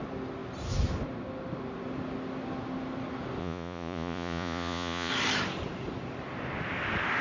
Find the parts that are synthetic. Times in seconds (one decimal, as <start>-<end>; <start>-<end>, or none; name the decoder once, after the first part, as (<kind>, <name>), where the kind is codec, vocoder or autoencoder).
3.4-5.1 (vocoder, Vocos)